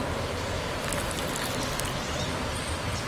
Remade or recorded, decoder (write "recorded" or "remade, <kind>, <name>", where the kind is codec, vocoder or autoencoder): recorded